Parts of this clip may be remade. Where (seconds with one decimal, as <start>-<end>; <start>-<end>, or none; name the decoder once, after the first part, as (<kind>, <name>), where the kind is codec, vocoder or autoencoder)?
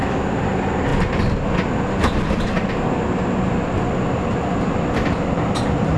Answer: none